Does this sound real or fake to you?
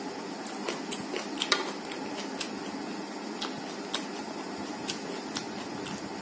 real